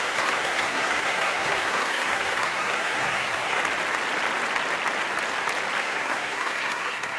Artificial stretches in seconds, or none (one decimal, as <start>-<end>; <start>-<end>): 0.0-3.6; 5.8-7.2